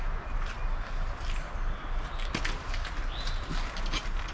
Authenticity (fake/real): real